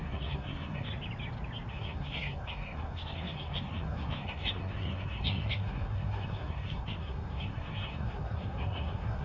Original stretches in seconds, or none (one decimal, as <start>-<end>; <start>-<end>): 0.9-1.7